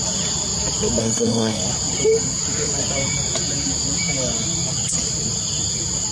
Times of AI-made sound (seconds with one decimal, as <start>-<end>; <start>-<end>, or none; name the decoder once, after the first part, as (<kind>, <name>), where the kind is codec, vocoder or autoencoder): 1.0-1.6 (codec, SNAC)